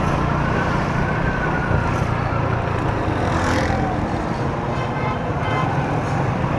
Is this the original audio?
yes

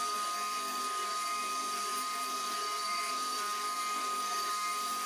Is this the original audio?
no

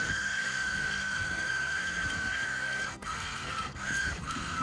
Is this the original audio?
no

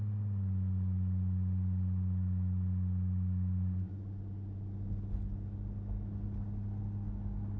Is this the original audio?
yes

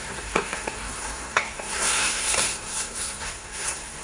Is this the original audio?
no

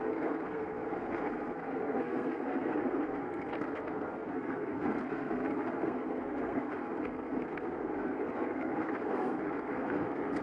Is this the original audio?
no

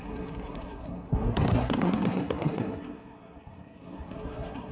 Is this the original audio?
no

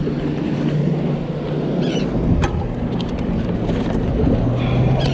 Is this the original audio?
yes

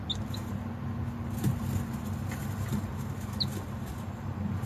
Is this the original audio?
yes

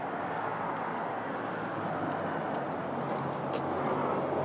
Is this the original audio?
yes